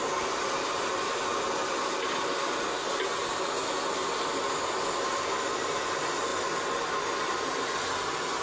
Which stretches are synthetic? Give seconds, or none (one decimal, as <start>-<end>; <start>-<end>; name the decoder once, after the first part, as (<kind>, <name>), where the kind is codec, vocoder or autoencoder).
none